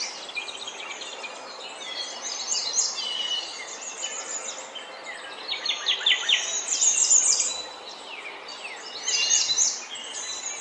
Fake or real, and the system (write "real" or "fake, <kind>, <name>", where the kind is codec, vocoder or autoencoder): real